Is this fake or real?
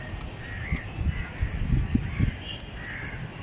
real